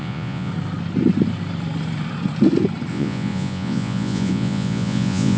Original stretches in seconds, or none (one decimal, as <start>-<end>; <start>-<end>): 0.5-2.9